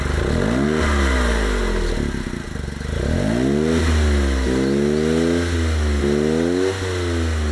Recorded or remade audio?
recorded